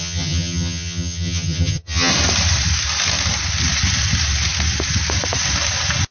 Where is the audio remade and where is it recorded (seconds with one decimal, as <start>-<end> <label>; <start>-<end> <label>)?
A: 0.0-2.1 remade; 2.1-6.1 recorded